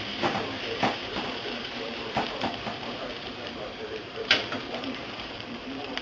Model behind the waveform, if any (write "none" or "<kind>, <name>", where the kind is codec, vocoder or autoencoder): vocoder, BigVGAN v2